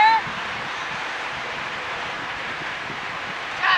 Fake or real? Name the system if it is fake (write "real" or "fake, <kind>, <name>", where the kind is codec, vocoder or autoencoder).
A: fake, vocoder, BigVGAN v2